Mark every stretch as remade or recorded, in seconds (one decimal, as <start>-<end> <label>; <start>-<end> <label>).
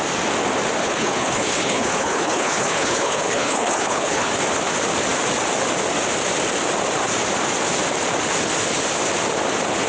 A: 0.0-0.8 recorded; 0.8-4.3 remade; 4.3-9.9 recorded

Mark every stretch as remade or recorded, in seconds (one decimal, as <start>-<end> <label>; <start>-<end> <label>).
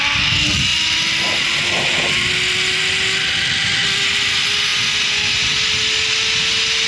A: 0.0-6.9 recorded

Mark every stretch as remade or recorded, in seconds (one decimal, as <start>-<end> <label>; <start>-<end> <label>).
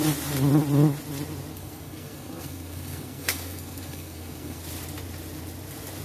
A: 0.0-1.5 recorded; 1.5-4.6 remade; 4.6-6.0 recorded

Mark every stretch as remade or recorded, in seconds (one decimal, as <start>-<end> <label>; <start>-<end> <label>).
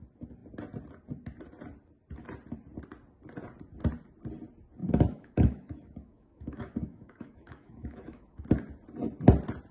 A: 0.0-4.8 recorded; 4.8-8.4 remade; 8.4-9.7 recorded